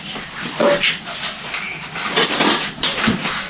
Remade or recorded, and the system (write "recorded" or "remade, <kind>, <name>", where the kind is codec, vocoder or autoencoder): recorded